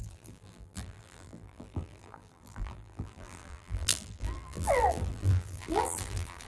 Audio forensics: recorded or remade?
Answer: remade